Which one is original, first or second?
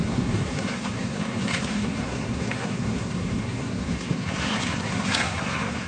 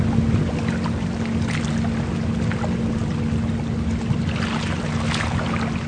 second